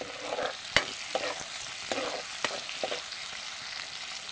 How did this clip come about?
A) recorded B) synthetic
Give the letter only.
A